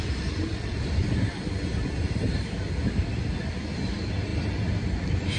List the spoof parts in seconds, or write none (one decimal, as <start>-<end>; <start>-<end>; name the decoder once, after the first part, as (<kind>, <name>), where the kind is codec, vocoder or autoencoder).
none